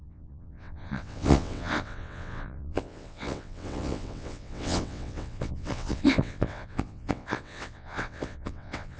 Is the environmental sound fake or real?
fake